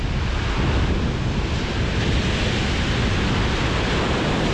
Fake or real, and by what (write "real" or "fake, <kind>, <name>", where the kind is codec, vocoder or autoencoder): real